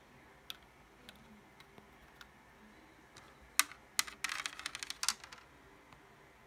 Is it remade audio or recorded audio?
recorded